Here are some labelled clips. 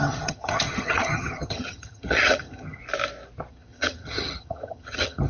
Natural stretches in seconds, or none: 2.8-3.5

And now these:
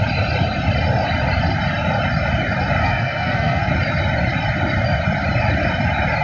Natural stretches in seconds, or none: 0.0-2.8; 3.7-6.2

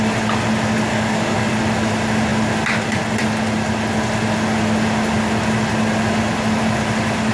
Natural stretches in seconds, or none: 0.0-0.9; 1.5-7.3

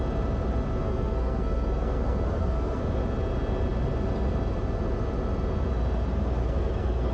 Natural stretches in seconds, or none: 0.0-0.8; 2.8-6.4

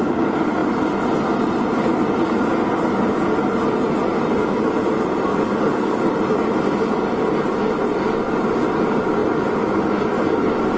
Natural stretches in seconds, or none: 0.0-5.3; 6.1-10.8